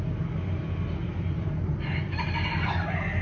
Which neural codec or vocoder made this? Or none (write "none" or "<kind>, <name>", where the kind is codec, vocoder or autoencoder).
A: none